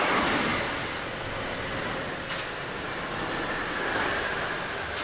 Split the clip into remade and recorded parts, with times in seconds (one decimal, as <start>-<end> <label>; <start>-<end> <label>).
0.0-5.0 recorded